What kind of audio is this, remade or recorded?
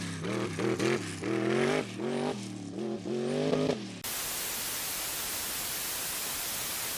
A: recorded